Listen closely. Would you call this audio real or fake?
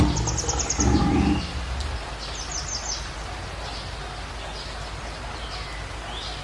real